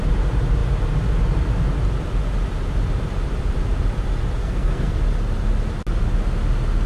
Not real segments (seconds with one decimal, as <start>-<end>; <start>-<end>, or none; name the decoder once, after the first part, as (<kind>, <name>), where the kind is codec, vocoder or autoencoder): 4.4-5.0 (codec, SNAC)